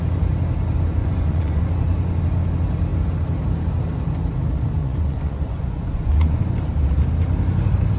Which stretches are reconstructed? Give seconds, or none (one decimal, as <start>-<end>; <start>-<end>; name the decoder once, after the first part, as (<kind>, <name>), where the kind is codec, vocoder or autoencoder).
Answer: 1.0-1.6 (vocoder, Vocos); 4.8-6.4